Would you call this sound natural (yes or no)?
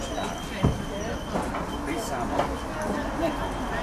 yes